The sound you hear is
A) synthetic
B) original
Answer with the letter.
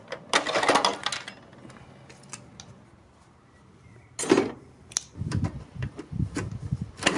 B